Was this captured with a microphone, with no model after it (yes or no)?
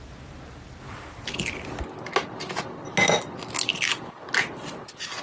yes